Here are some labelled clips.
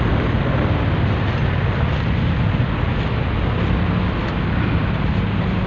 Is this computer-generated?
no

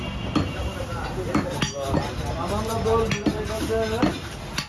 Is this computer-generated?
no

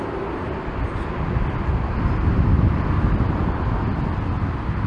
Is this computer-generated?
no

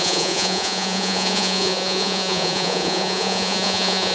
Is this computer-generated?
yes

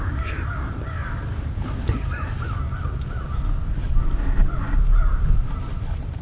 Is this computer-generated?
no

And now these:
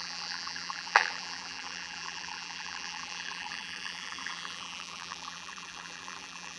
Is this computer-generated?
yes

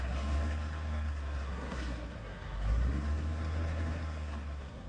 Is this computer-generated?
yes